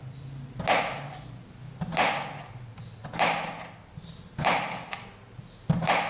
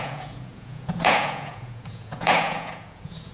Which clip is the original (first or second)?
first